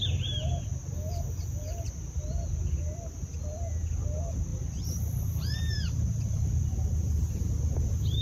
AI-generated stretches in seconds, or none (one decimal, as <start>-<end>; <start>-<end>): 0.0-0.5; 4.5-8.2